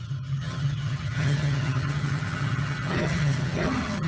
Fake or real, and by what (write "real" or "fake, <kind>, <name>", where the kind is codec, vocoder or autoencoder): fake, vocoder, HiFi-GAN